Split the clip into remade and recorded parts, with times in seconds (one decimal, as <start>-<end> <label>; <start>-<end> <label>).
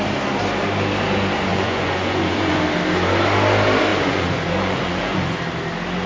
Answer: 0.0-1.5 recorded; 1.5-2.6 remade; 2.6-3.9 recorded; 3.9-5.4 remade; 5.4-6.1 recorded